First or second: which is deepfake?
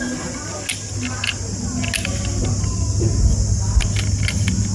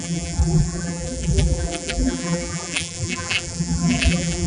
second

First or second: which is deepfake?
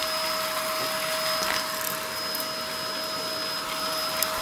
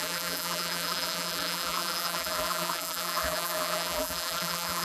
second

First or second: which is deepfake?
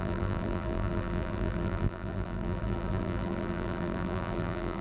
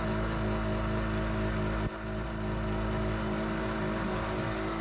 first